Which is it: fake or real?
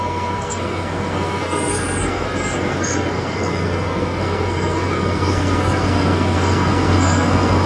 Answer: fake